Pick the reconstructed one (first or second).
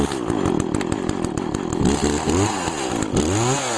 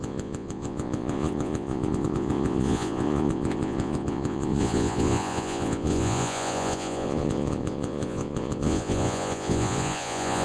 second